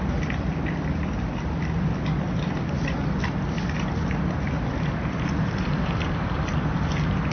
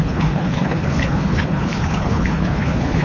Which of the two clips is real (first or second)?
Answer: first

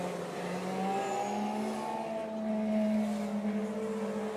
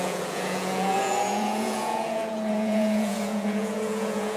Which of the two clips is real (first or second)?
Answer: first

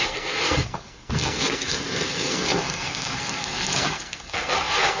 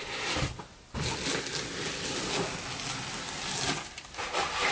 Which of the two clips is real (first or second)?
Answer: second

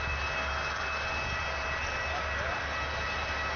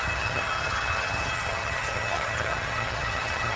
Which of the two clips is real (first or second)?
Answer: first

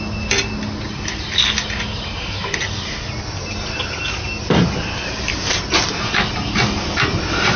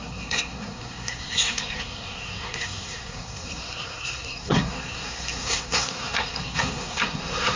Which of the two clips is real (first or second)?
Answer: first